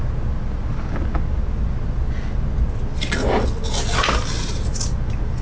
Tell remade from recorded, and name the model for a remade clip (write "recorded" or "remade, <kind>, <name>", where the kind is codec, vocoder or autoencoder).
recorded